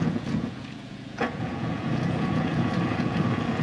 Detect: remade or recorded remade